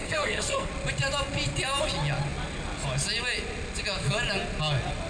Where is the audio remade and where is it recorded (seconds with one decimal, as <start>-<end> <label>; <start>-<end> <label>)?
0.0-0.7 remade; 0.7-5.1 recorded